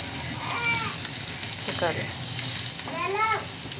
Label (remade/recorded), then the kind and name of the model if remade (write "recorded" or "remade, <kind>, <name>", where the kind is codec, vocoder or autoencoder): recorded